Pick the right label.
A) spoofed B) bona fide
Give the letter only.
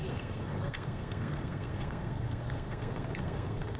A